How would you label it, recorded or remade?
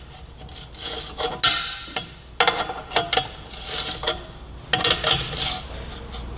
recorded